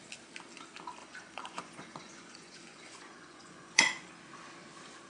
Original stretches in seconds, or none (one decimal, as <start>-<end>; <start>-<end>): 0.0-1.0; 4.1-5.1